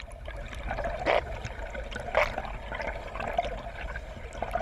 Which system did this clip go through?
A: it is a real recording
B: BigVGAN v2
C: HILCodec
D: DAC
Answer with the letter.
A